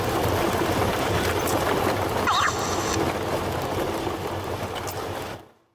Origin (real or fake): real